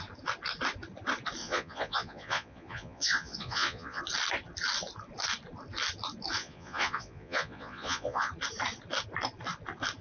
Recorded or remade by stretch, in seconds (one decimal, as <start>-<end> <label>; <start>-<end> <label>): 0.0-1.4 recorded; 1.4-4.0 remade; 4.0-6.4 recorded; 6.4-8.3 remade; 8.3-10.0 recorded